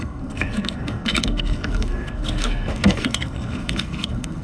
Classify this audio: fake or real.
fake